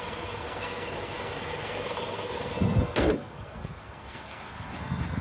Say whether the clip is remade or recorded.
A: remade